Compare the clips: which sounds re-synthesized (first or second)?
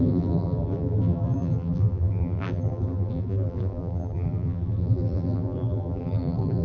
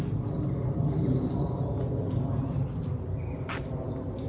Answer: first